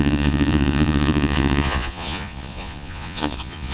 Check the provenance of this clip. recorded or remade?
remade